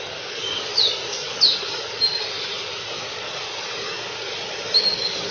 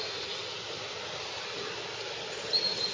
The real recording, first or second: second